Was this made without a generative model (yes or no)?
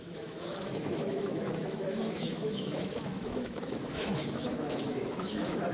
no